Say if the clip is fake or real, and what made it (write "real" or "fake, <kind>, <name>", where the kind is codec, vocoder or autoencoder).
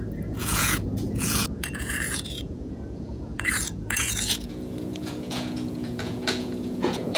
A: fake, vocoder, Vocos